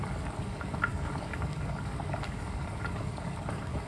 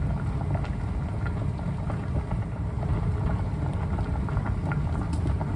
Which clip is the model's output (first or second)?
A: first